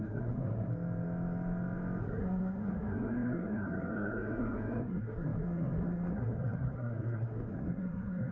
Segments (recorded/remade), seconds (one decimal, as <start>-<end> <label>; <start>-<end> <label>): 0.0-0.7 remade; 0.7-2.0 recorded; 2.0-8.3 remade